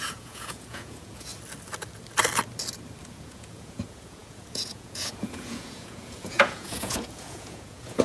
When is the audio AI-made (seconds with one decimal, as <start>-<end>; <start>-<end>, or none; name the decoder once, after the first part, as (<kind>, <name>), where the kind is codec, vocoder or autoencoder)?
0.0-1.3 (vocoder, Vocos); 3.1-8.0